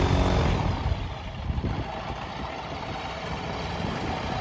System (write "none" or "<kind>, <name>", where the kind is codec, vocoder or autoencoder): none